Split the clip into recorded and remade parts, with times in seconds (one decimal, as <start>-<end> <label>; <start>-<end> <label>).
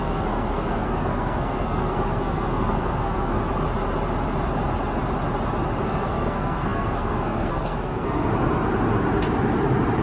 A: 0.0-3.4 remade; 3.4-5.8 recorded; 5.8-8.3 remade; 8.3-10.0 recorded